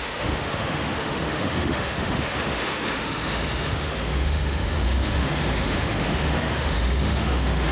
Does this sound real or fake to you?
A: fake